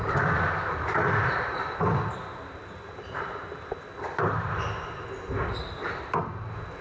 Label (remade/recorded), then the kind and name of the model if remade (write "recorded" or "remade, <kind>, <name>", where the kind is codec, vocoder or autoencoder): recorded